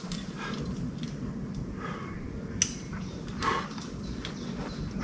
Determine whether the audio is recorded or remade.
recorded